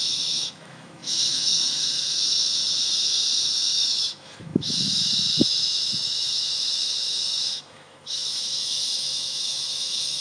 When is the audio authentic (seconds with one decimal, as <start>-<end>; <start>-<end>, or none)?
none